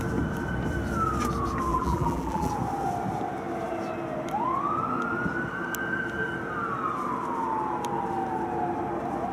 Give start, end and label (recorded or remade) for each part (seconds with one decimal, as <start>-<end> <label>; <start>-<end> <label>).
0.0-1.7 recorded; 1.7-2.5 remade; 2.5-9.3 recorded